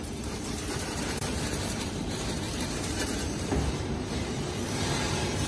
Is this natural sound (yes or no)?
no